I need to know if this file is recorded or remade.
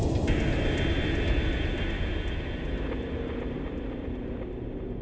recorded